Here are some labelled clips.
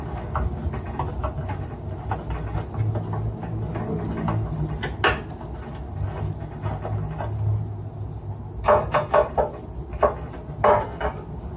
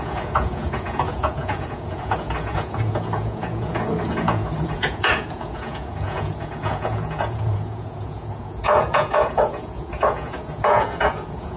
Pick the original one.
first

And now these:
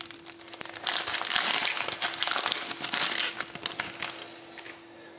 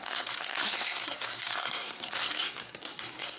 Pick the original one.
first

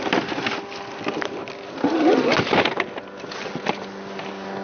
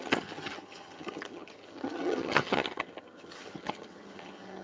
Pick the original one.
first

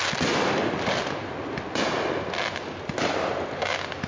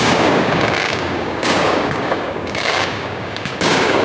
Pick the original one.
first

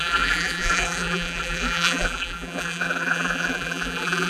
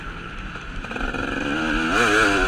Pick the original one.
second